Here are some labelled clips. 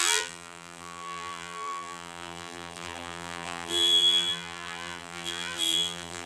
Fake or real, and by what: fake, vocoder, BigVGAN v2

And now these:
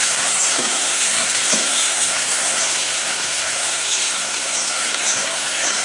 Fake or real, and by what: fake, codec, SNAC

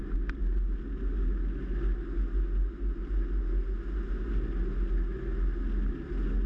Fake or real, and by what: real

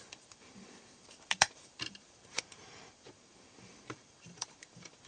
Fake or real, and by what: fake, vocoder, BigVGAN v2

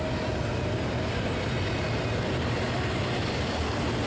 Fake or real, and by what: real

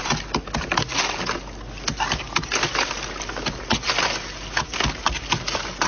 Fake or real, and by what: real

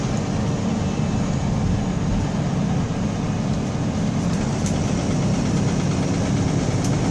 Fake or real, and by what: fake, vocoder, BigVGAN v2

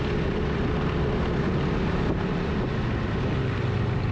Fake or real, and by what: real